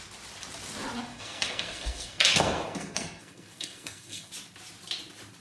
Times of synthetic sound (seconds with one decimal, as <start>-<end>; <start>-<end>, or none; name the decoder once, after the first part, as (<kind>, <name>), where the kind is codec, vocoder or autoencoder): 1.1-4.3 (codec, SNAC)